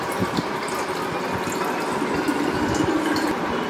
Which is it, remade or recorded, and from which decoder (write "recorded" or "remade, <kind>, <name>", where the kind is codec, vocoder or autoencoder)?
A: recorded